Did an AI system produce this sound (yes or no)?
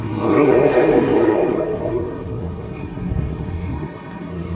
yes